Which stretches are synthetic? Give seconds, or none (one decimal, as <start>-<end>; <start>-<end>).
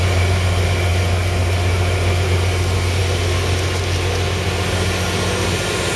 none